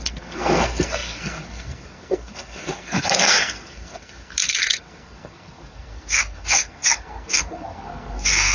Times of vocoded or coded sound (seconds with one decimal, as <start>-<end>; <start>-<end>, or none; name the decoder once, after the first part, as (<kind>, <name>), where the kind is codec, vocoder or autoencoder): 0.0-8.5 (codec, SNAC)